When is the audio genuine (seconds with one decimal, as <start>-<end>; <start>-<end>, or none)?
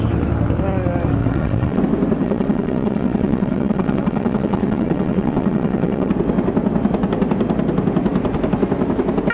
0.0-1.2; 1.8-2.2; 6.1-9.3